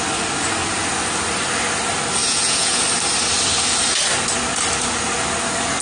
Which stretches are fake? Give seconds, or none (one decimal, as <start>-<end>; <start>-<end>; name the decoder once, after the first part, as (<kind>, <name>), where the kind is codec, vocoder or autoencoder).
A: 2.2-2.8 (vocoder, Vocos)